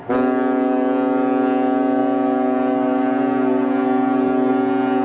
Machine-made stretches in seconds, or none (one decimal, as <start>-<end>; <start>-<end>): none